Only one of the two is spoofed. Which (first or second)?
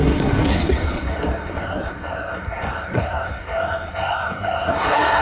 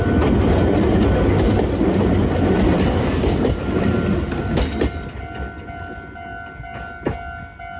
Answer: first